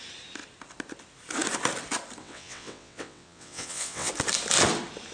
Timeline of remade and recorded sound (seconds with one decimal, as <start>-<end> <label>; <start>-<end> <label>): 0.0-2.2 recorded; 2.2-4.1 remade; 4.1-5.1 recorded